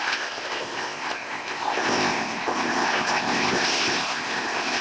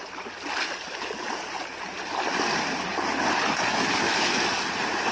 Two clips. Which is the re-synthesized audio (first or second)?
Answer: first